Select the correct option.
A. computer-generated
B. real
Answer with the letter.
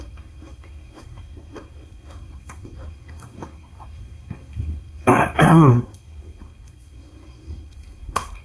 A